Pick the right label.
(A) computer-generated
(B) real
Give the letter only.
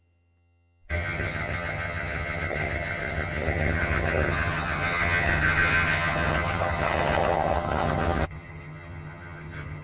A